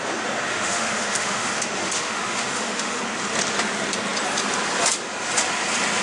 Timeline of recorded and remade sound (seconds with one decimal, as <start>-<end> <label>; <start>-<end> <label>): 0.0-0.5 recorded; 0.5-3.0 remade; 3.0-6.0 recorded